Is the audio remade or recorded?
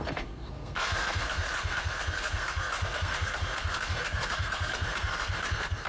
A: remade